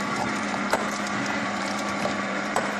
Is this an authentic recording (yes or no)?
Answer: no